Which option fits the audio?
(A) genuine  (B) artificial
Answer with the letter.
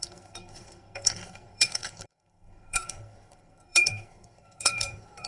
B